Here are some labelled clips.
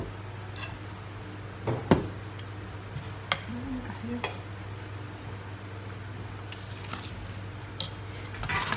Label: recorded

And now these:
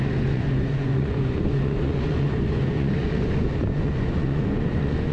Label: remade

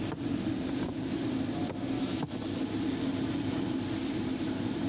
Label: recorded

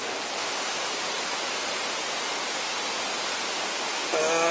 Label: recorded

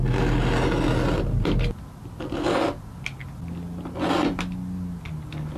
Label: recorded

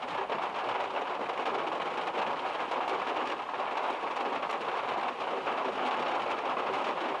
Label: recorded